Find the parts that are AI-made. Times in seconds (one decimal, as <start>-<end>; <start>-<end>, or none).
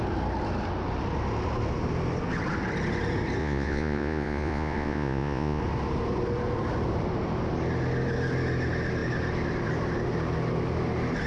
3.4-5.6